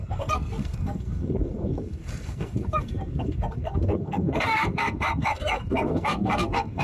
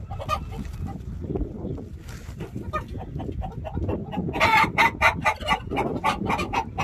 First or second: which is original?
second